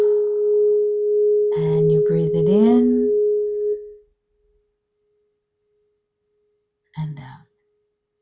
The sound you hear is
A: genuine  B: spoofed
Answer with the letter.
A